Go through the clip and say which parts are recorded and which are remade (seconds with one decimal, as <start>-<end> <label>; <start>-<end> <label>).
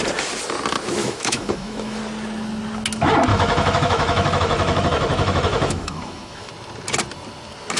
0.0-1.0 recorded; 1.0-2.0 remade; 2.0-3.3 recorded; 3.3-6.5 remade; 6.5-7.8 recorded